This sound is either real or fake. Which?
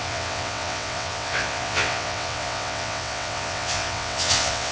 fake